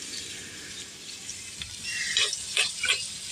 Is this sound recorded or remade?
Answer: remade